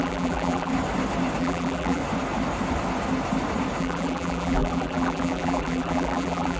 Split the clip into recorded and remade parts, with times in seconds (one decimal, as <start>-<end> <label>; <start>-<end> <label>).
0.0-0.7 remade; 0.7-1.4 recorded; 1.4-2.0 remade; 2.0-3.8 recorded; 3.8-6.6 remade